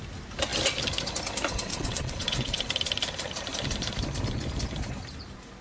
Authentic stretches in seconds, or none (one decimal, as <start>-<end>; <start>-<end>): 0.0-1.7; 2.6-5.6